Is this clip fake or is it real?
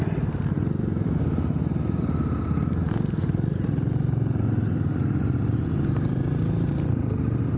real